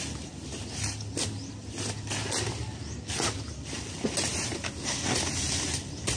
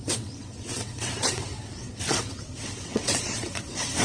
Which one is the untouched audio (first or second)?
first